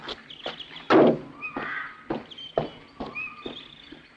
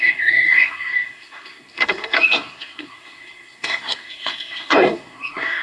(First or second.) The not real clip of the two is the second